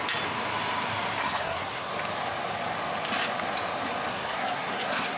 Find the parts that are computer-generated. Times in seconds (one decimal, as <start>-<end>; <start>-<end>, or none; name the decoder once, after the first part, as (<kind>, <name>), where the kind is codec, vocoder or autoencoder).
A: 1.2-1.9 (codec, SNAC); 4.1-5.2